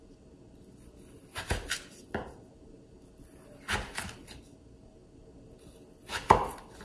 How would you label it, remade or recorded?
recorded